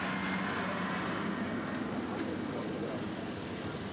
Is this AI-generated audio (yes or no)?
no